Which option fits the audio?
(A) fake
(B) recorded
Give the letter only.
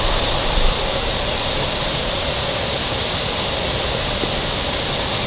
B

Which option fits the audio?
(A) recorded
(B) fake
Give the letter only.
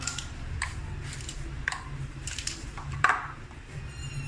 B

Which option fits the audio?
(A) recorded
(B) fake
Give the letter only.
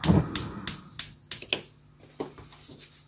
A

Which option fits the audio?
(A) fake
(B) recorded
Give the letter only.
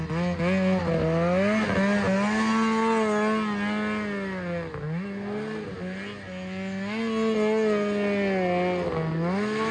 B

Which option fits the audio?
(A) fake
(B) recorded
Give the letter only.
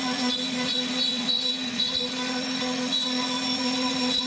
A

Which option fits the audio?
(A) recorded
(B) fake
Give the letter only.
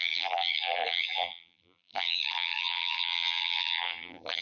B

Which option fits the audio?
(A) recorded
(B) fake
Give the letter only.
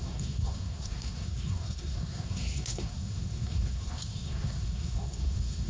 B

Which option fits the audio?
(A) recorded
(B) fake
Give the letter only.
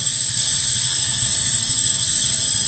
B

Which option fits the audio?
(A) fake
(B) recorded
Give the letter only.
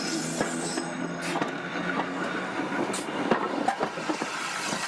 B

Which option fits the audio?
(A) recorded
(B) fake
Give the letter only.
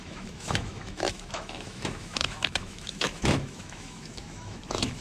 B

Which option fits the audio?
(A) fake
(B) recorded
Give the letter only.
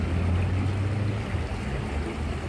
B